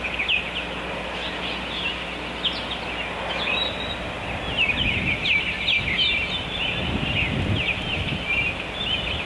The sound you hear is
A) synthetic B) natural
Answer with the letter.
B